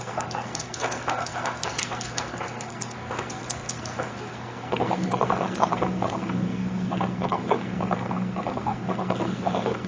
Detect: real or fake fake